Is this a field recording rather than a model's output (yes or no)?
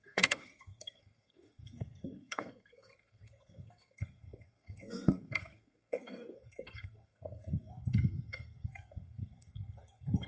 no